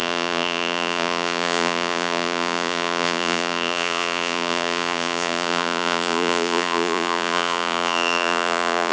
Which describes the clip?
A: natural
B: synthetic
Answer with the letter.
B